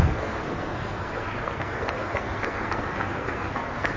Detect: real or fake fake